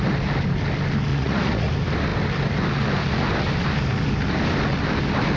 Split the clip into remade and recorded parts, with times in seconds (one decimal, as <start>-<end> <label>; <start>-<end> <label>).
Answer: 0.0-1.1 recorded; 1.1-1.7 remade; 1.7-5.4 recorded